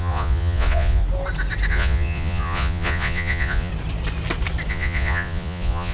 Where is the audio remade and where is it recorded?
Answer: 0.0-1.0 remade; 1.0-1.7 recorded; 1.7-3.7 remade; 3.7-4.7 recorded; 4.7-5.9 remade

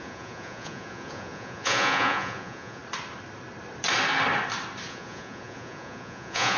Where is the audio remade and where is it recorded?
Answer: 0.0-2.8 remade; 2.8-4.9 recorded; 4.9-6.6 remade

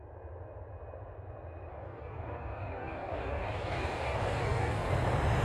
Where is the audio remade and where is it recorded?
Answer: 0.0-1.7 recorded; 1.7-4.9 remade; 4.9-5.4 recorded

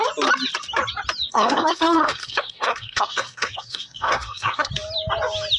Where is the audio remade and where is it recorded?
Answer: 0.0-1.3 recorded; 1.3-4.7 remade; 4.7-5.6 recorded

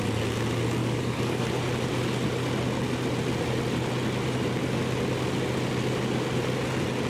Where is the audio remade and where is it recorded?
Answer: 0.0-0.8 recorded; 0.8-1.4 remade; 1.4-7.1 recorded

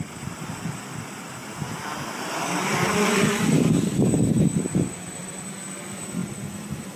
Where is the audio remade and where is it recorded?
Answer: 0.0-7.0 remade

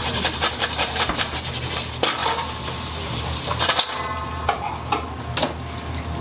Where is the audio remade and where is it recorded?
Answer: 0.0-1.5 remade; 1.5-2.2 recorded; 2.2-4.7 remade; 4.7-6.2 recorded

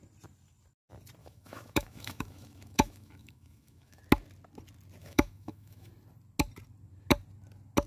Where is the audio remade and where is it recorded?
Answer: 0.0-1.2 recorded; 1.2-4.0 remade; 4.0-5.0 recorded; 5.0-5.9 remade; 5.9-7.9 recorded